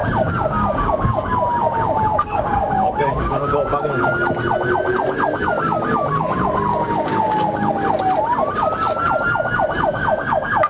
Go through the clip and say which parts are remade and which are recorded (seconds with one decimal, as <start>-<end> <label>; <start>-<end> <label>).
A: 0.0-4.1 remade; 4.1-6.7 recorded; 6.7-7.7 remade; 7.7-9.9 recorded; 9.9-10.7 remade